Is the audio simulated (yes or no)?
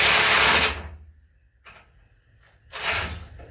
no